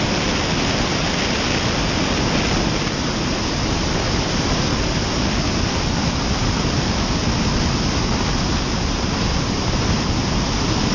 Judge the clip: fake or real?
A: real